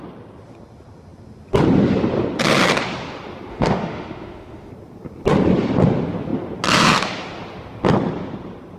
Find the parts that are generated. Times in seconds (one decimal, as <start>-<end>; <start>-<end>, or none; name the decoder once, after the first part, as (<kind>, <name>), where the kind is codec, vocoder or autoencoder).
3.5-4.7 (autoencoder, DAC-VAE)